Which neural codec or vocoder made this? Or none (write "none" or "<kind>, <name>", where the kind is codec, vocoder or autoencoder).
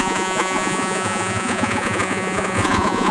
vocoder, Vocos